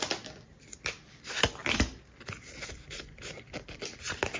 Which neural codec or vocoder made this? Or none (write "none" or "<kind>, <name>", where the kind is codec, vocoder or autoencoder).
none